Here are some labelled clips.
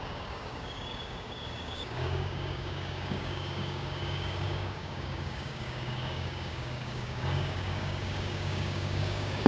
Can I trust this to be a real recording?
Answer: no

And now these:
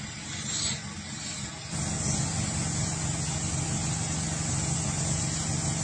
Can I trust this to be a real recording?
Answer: yes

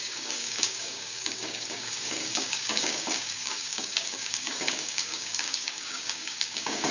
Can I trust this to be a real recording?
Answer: no